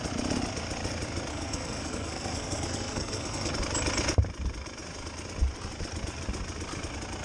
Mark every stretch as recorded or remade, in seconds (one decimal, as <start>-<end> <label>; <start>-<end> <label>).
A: 0.0-1.3 recorded; 1.3-3.5 remade; 3.5-7.2 recorded